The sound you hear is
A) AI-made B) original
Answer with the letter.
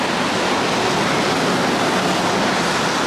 B